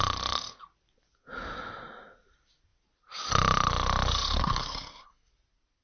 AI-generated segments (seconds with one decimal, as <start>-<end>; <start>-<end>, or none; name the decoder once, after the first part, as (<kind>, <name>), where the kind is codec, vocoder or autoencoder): 4.4-5.3 (codec, SNAC)